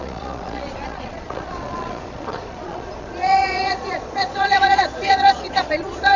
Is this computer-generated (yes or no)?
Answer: yes